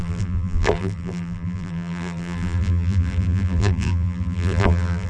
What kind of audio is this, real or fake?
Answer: fake